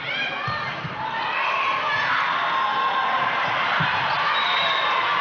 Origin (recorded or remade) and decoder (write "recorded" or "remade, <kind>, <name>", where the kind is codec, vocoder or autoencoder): recorded